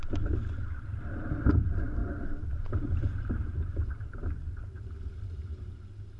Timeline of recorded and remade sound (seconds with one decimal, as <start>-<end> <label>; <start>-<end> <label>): 0.0-2.0 recorded; 2.0-5.7 remade; 5.7-6.2 recorded